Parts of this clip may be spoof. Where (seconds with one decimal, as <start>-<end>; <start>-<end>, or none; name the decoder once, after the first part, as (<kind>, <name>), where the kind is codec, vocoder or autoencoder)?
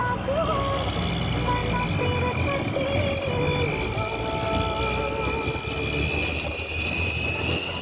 6.2-7.3 (vocoder, BigVGAN v2)